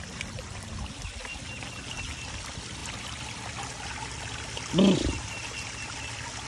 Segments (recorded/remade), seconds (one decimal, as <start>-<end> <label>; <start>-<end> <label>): 0.0-6.5 recorded